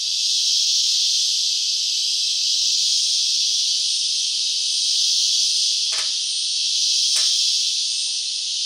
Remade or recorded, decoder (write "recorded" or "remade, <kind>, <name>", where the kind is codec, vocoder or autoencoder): recorded